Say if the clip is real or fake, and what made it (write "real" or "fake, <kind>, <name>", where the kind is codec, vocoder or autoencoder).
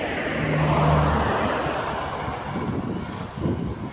real